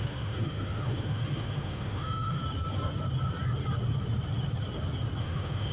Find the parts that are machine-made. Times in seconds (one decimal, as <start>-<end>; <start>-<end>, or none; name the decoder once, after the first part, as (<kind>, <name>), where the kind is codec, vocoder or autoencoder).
0.0-2.4 (autoencoder, DAC-VAE); 5.2-5.7